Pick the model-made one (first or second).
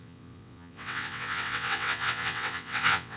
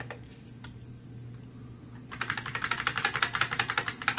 first